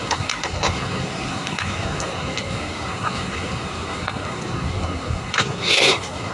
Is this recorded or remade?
remade